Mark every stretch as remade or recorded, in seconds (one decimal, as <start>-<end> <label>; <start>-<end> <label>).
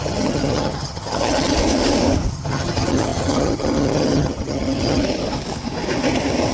0.0-1.5 remade; 1.5-2.3 recorded; 2.3-5.0 remade; 5.0-6.5 recorded